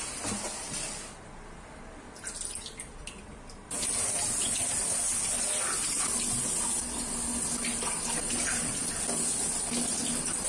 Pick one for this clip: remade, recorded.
recorded